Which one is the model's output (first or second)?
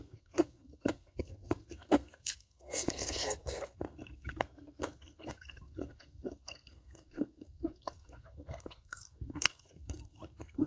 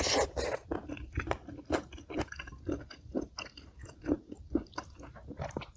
first